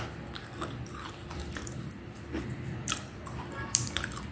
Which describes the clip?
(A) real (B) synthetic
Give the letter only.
B